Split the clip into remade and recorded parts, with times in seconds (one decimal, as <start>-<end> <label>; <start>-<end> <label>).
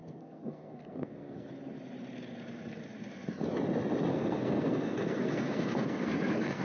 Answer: 0.0-1.5 remade; 1.5-4.1 recorded; 4.1-6.6 remade